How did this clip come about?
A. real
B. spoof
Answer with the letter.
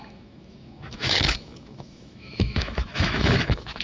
B